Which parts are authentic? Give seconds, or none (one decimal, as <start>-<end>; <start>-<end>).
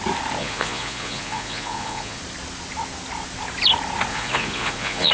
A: 0.0-0.4; 2.2-4.1